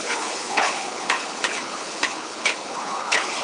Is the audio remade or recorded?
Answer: remade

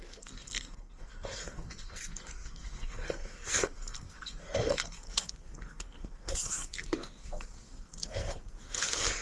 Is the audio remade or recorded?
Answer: remade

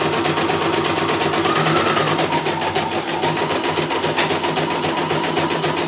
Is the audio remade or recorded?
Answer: recorded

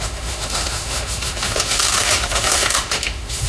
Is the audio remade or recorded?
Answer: remade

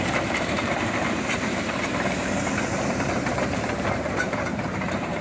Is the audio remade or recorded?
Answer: remade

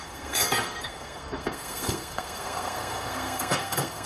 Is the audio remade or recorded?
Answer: remade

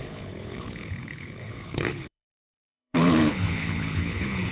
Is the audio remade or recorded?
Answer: remade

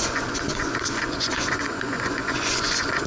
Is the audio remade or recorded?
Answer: remade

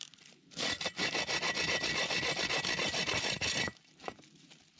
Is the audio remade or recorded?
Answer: recorded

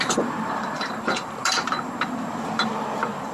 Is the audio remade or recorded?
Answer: remade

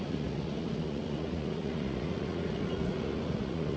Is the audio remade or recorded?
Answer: remade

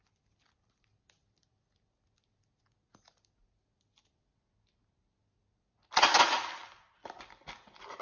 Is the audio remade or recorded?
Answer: recorded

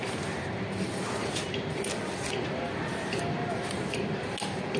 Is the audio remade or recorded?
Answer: recorded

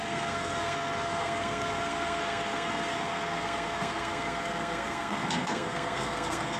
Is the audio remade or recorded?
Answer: remade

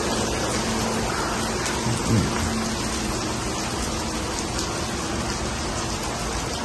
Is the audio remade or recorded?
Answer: recorded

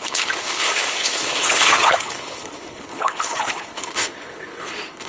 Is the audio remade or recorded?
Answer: remade